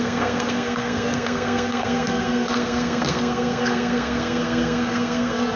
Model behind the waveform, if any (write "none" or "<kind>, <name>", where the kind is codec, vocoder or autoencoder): codec, SNAC